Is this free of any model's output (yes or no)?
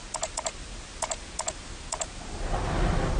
yes